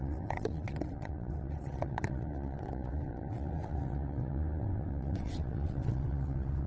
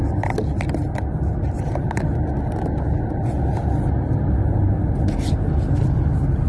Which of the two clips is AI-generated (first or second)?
first